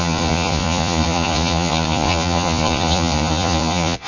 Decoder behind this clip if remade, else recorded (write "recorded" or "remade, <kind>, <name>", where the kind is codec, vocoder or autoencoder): remade, vocoder, Vocos